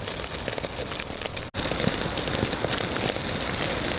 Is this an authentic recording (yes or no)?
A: yes